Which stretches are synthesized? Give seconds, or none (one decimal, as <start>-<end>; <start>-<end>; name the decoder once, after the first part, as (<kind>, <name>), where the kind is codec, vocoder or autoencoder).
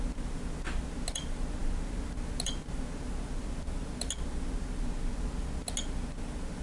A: none